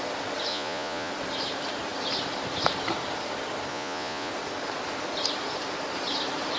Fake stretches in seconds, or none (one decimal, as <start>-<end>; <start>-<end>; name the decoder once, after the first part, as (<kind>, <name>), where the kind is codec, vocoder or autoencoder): 0.5-1.1 (vocoder, Vocos); 3.7-4.3